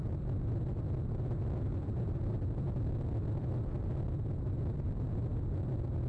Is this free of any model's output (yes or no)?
no